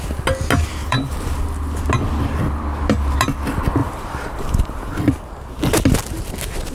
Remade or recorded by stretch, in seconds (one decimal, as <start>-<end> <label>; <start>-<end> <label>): 0.0-0.8 recorded; 0.8-1.4 remade; 1.4-3.8 recorded; 3.8-4.7 remade; 4.7-6.7 recorded